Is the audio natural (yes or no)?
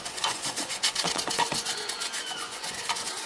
no